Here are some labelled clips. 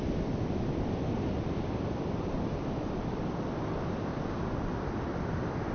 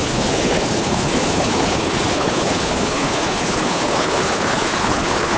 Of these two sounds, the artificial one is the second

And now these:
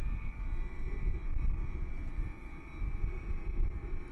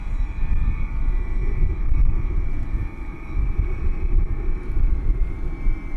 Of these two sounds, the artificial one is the second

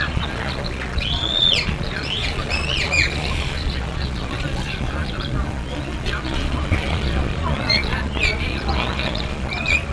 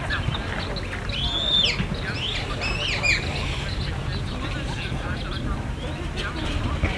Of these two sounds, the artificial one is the first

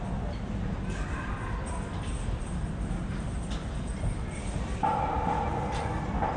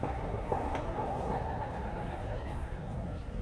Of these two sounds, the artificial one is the second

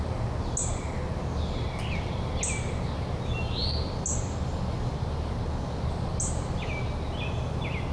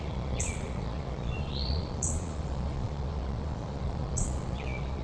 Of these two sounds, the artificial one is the second